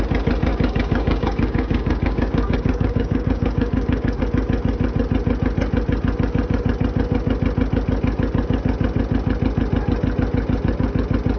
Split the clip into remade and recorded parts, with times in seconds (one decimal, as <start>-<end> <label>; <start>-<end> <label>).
0.0-0.5 recorded; 0.5-4.2 remade; 4.2-11.4 recorded